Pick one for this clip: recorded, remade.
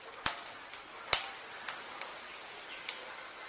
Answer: recorded